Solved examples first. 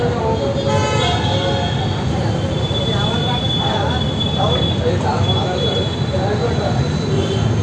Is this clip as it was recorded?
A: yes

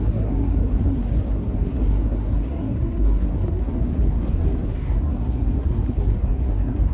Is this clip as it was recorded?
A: no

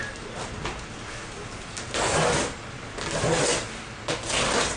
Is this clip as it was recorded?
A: yes